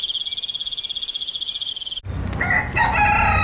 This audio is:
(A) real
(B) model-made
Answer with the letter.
A